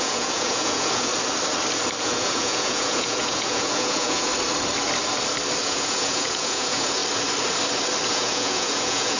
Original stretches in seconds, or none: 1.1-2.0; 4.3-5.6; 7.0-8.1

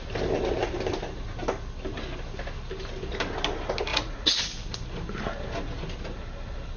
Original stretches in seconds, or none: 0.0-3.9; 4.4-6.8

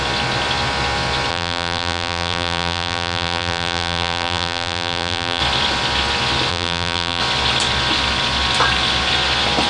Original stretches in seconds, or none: 0.0-1.3; 5.4-6.5; 7.2-9.7

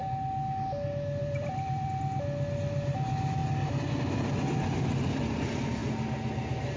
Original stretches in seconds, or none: 0.0-1.2; 2.0-6.8